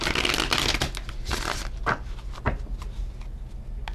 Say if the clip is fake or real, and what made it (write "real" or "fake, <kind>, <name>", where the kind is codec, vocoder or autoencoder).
real